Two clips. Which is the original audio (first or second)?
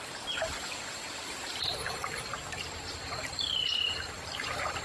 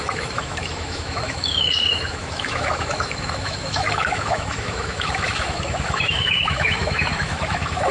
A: first